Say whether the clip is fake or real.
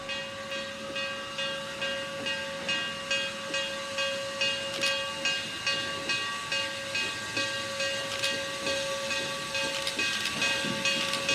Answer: real